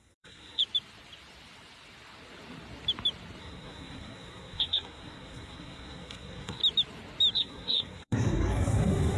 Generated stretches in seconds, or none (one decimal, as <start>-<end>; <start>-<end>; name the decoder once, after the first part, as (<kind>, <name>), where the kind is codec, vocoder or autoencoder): 0.0-0.6 (codec, SNAC); 3.4-6.6; 7.3-9.2